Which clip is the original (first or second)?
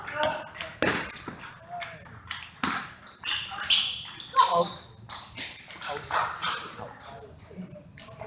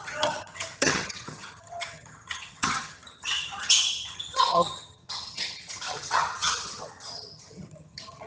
first